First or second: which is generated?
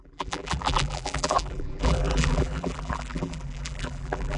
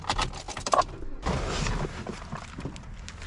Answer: first